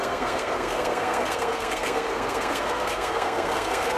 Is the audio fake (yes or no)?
yes